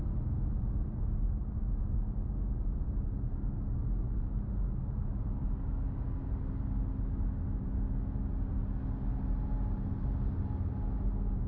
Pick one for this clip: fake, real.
real